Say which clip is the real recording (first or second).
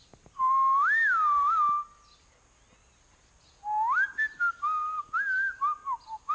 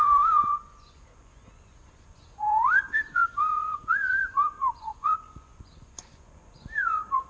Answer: first